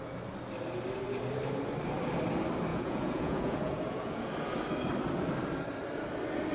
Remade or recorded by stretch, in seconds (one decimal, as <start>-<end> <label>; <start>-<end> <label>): 0.0-2.7 recorded; 2.7-4.2 remade; 4.2-6.5 recorded